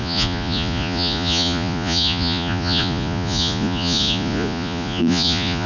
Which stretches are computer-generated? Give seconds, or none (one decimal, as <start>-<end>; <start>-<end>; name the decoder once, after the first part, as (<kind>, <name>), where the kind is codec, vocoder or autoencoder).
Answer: 0.0-5.7 (vocoder, Vocos)